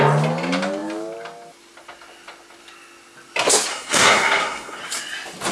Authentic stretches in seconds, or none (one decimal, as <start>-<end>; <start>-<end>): 0.0-3.7; 4.8-5.5